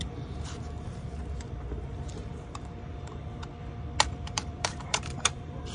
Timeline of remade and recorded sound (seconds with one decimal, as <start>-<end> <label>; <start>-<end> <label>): 0.0-1.2 remade; 1.2-2.1 recorded; 2.1-3.4 remade; 3.4-4.1 recorded; 4.1-5.7 remade